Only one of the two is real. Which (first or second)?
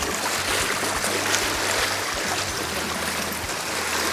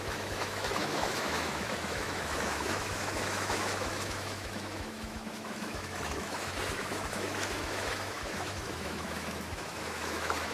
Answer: first